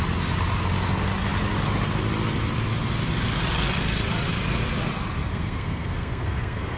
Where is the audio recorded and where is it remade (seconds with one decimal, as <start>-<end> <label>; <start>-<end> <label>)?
0.0-5.3 recorded; 5.3-6.8 remade